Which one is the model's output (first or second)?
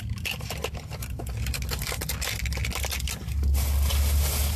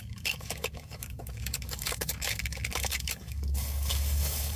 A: second